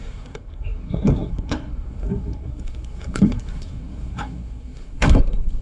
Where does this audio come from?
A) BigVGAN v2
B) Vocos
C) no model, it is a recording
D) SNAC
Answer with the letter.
D